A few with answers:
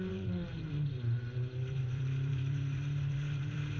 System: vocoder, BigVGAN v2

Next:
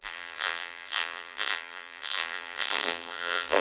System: vocoder, BigVGAN v2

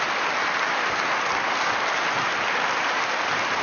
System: none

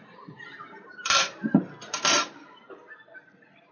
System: vocoder, BigVGAN v2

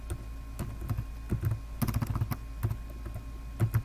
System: none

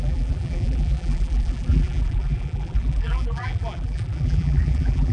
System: vocoder, BigVGAN v2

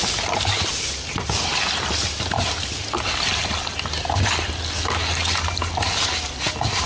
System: none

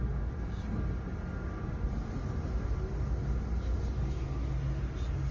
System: none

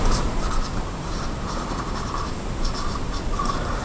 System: vocoder, BigVGAN v2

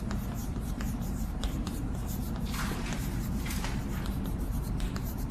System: vocoder, BigVGAN v2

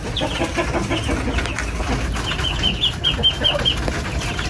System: none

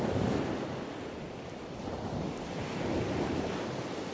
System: none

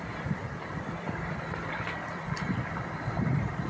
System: vocoder, BigVGAN v2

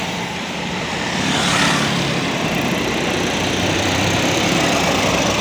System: vocoder, BigVGAN v2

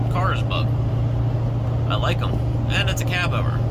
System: none